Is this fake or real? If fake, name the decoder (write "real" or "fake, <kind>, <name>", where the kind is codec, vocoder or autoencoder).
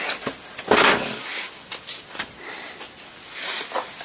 fake, vocoder, BigVGAN v2